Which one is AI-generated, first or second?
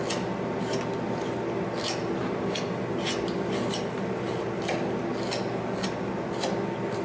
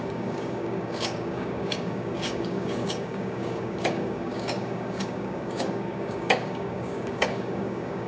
second